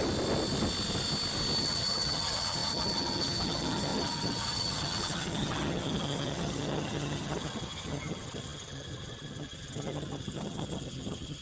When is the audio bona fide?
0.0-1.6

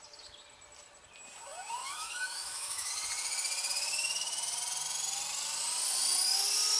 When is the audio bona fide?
0.0-1.8; 2.9-6.8

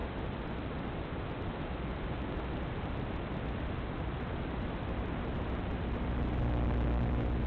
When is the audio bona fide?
0.0-7.5

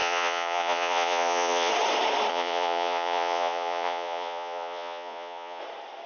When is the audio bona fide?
1.7-2.3; 5.6-6.1

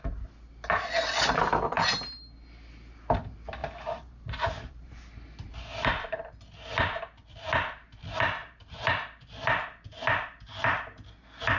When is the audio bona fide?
0.0-3.6; 5.0-8.4; 8.9-11.6

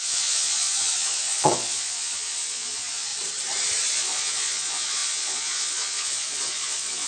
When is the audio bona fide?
3.1-3.9

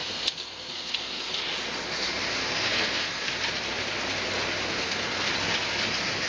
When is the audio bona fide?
1.3-2.4; 3.3-4.7; 5.3-6.3

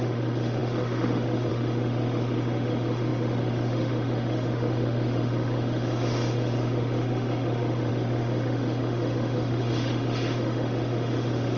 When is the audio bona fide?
none